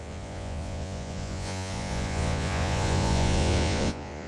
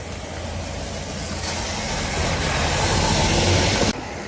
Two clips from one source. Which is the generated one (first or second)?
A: first